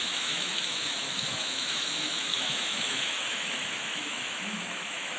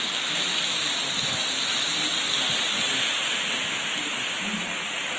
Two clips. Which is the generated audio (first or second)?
first